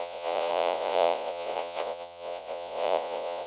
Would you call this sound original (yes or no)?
no